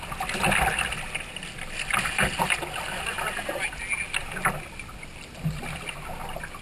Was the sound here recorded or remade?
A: recorded